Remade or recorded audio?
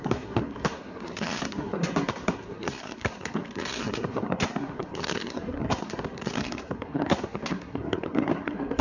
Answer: remade